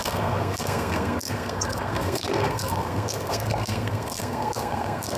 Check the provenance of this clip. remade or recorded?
remade